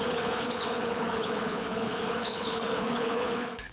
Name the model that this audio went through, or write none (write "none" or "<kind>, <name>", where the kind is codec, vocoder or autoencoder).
codec, HILCodec